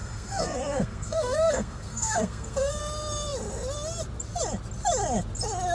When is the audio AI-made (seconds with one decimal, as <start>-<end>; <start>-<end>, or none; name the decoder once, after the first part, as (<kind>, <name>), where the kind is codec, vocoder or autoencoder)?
0.0-2.8 (codec, SNAC)